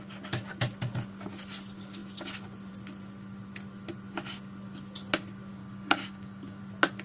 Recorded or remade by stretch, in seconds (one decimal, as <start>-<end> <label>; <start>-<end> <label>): 0.0-5.6 recorded; 5.6-6.6 remade; 6.6-7.0 recorded